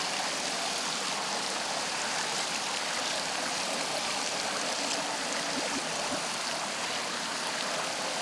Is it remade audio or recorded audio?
recorded